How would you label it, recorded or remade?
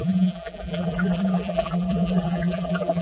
remade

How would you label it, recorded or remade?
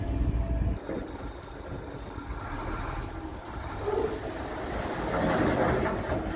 recorded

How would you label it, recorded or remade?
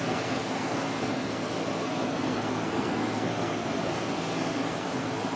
remade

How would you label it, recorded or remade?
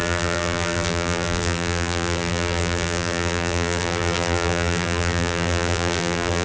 remade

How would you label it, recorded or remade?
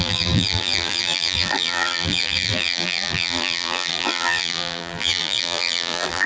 remade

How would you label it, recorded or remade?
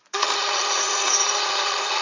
remade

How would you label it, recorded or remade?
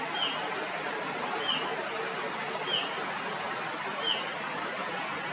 recorded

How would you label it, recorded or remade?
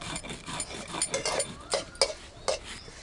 recorded